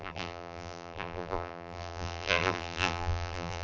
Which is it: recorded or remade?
remade